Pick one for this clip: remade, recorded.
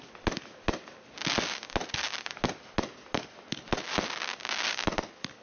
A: recorded